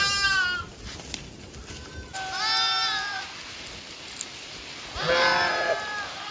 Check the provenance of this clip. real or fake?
real